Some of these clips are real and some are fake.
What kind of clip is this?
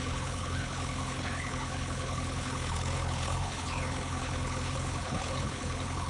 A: fake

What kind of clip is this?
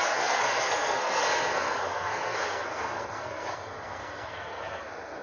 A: fake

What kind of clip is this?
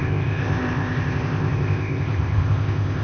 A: fake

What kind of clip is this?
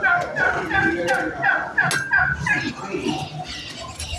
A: real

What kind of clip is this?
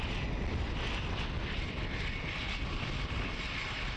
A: real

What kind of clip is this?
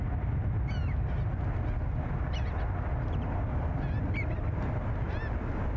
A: real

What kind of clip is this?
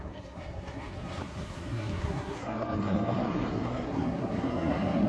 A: fake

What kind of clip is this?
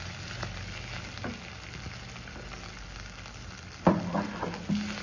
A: real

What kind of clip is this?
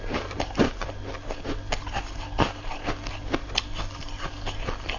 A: real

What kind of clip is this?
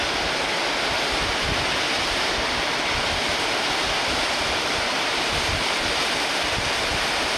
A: real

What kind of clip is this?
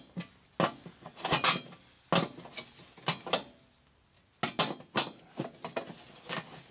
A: real